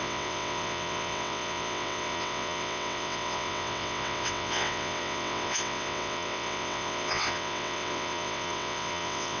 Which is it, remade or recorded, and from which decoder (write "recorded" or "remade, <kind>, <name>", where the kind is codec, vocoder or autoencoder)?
remade, vocoder, WaveNeXt